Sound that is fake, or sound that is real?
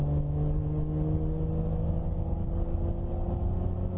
real